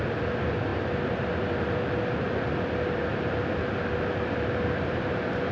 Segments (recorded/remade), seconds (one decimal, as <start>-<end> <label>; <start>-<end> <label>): 0.0-5.5 recorded